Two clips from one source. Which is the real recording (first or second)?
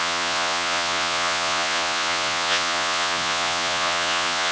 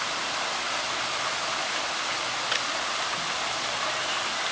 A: second